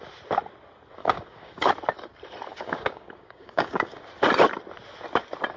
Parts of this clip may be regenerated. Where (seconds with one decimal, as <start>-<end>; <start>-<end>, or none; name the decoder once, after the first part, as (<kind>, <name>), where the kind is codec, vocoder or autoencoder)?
1.0-1.7 (codec, DAC); 2.5-4.0